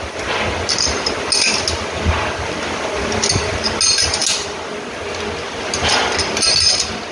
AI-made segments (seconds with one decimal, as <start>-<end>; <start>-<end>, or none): none